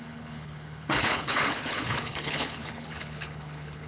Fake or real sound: fake